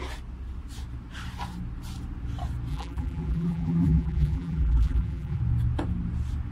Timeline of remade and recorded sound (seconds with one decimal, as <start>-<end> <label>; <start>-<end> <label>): 0.0-2.7 recorded; 2.7-5.4 remade; 5.4-6.5 recorded